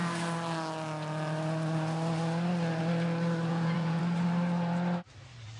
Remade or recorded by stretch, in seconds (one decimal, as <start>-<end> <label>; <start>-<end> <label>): 0.0-3.5 recorded; 3.5-4.0 remade; 4.0-5.6 recorded